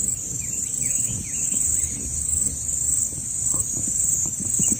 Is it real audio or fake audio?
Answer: fake